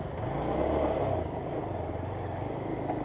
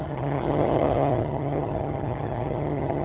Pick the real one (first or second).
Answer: first